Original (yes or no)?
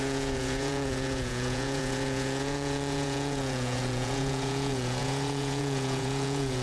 no